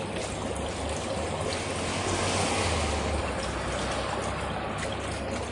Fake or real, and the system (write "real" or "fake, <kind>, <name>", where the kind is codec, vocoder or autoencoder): real